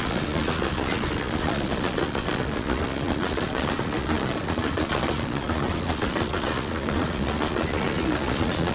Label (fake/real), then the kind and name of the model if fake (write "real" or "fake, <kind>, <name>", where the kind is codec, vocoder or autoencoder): fake, vocoder, Vocos